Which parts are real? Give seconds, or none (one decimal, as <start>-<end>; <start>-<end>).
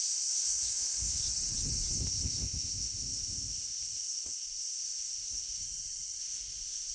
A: 1.2-2.0; 5.6-6.2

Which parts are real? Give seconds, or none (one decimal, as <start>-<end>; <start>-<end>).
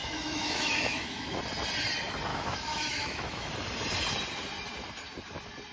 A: 1.4-2.3; 3.5-5.7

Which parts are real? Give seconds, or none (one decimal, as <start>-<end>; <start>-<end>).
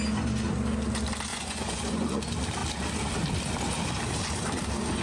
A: 0.0-1.3; 2.2-5.0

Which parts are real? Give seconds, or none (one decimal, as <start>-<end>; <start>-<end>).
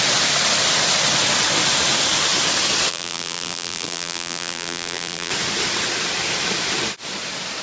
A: 0.0-2.9; 5.3-7.6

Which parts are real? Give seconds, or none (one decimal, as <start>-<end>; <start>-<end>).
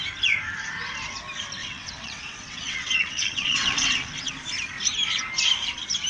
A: 0.0-1.6; 4.3-6.1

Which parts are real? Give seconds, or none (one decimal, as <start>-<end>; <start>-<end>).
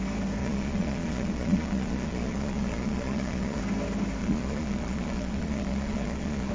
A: 0.0-0.4; 3.6-4.2